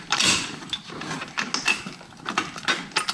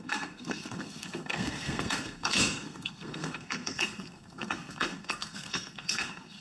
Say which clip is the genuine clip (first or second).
first